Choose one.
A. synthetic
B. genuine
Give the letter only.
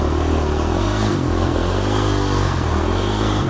A